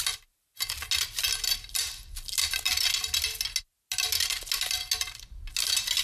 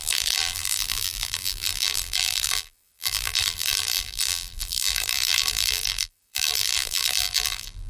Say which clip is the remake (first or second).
second